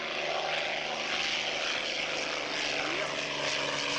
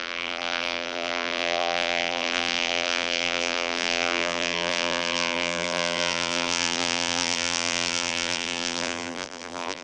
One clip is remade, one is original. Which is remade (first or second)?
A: second